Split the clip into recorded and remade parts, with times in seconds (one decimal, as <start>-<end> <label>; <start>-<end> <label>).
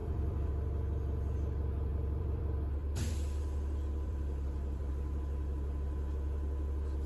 0.0-0.5 remade; 0.5-1.9 recorded; 1.9-2.4 remade; 2.4-2.8 recorded; 2.8-4.9 remade; 4.9-7.1 recorded